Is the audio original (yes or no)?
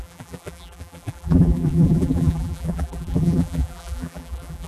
no